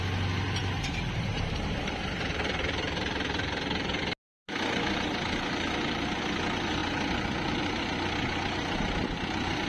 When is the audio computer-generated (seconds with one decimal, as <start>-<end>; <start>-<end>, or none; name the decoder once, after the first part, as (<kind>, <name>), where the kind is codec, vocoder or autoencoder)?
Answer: 0.6-4.0 (vocoder, BigVGAN v2)